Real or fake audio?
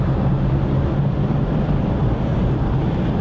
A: real